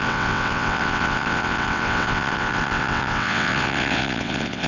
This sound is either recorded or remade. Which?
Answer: remade